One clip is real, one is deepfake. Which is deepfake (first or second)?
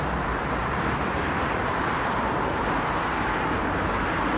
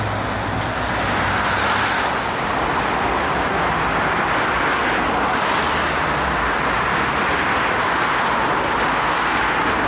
first